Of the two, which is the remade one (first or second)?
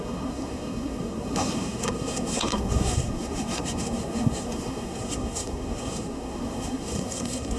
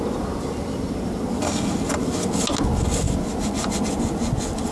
first